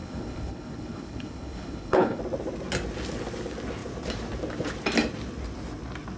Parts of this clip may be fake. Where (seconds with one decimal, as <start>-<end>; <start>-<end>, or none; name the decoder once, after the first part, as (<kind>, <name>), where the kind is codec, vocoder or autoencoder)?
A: 0.0-2.2 (codec, HILCodec)